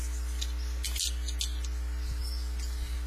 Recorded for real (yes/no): yes